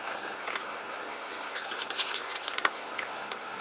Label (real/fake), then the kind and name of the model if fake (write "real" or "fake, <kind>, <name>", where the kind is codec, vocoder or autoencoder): fake, codec, SNAC